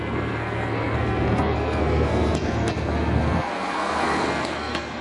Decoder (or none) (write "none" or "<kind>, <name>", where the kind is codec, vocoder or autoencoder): codec, SNAC